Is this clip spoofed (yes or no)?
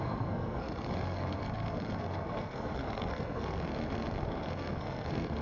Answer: yes